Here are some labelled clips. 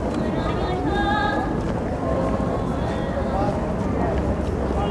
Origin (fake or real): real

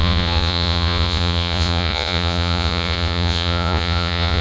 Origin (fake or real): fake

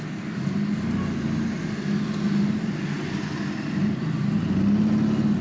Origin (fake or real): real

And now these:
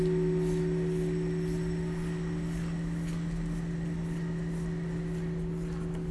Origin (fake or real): real